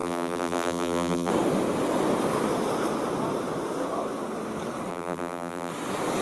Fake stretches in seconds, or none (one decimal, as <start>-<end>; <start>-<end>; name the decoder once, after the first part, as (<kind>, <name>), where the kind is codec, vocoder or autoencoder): 0.0-1.3 (vocoder, BigVGAN v2); 4.9-5.7